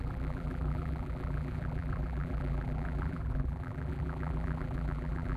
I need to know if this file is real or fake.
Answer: fake